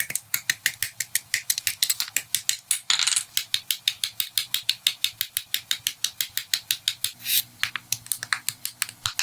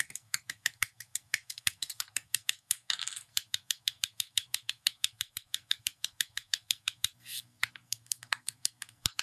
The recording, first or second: first